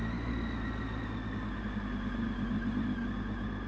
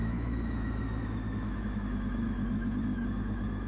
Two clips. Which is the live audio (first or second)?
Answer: first